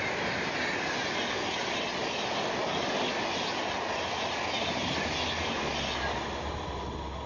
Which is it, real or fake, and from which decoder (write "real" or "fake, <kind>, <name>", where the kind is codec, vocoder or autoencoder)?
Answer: real